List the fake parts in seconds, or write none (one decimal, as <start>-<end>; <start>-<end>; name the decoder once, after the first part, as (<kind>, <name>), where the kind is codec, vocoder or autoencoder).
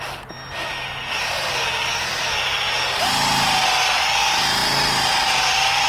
4.6-5.9 (vocoder, BigVGAN v2)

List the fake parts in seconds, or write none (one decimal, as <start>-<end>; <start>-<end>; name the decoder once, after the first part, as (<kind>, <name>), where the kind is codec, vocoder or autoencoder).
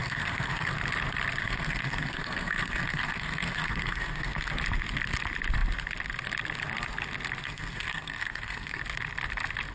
0.0-0.7 (codec, SNAC); 1.4-4.5; 7.4-8.8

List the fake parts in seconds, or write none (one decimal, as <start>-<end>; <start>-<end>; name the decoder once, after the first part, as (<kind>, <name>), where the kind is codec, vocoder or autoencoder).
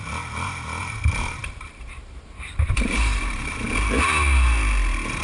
0.8-3.5 (vocoder, BigVGAN v2)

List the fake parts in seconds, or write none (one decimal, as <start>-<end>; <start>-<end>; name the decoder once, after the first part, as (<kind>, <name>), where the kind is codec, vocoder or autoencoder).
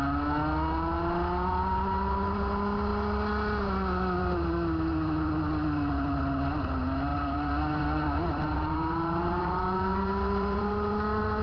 7.1-10.9 (vocoder, BigVGAN v2)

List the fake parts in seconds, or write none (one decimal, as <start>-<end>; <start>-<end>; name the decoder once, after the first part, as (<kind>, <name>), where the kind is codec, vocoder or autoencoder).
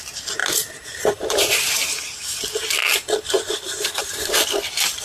0.0-0.4 (vocoder, BigVGAN v2); 1.0-5.0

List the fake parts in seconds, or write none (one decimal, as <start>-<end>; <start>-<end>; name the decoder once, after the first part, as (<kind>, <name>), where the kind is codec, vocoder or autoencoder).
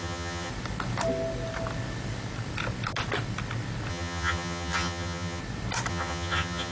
0.0-0.5 (vocoder, HiFi-GAN); 3.9-5.4; 5.9-6.7